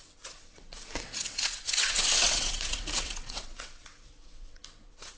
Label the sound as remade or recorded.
remade